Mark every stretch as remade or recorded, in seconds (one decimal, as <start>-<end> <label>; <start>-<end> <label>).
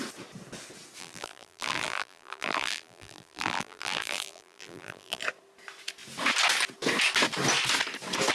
0.0-1.0 recorded; 1.0-5.2 remade; 5.2-8.3 recorded